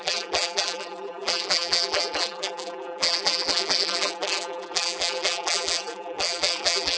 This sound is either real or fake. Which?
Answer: fake